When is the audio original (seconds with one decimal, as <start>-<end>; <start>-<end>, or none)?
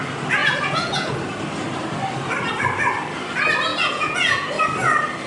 0.0-0.4; 1.1-3.7; 4.5-5.3